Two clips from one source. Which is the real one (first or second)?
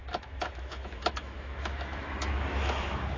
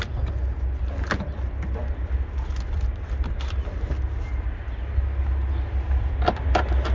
second